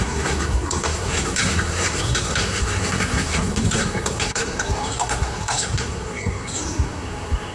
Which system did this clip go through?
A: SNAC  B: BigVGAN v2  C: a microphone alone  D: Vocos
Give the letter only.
A